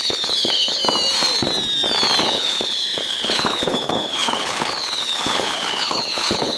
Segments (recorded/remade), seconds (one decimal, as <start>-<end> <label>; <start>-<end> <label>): 0.0-0.8 remade; 0.8-2.2 recorded; 2.2-6.6 remade